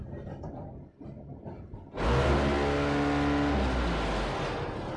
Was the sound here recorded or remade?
recorded